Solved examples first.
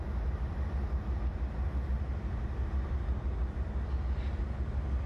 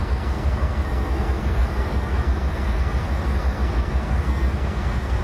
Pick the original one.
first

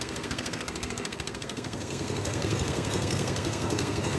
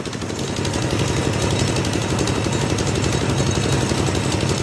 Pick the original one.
second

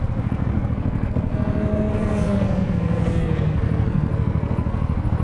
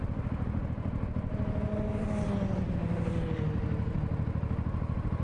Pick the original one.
second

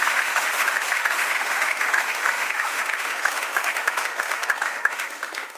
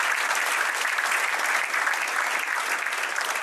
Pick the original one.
second